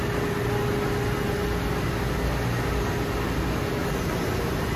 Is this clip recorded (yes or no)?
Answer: yes